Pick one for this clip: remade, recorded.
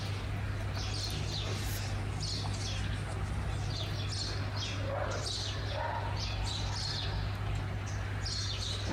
recorded